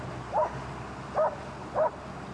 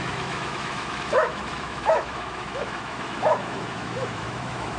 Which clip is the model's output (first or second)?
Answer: second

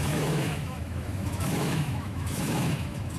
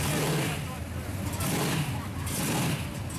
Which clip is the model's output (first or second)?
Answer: first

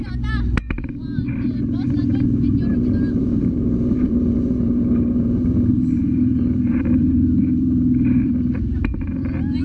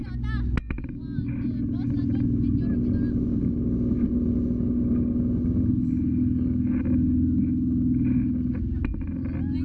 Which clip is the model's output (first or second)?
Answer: first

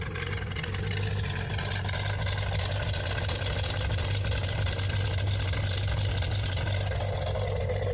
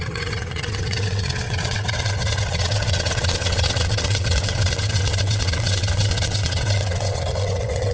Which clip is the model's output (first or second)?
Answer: second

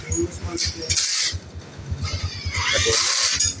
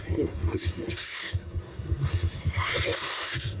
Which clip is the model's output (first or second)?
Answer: second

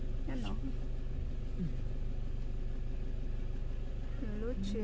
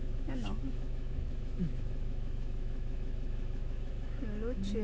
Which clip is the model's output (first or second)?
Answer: second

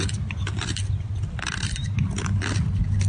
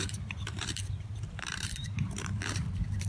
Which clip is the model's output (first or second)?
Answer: second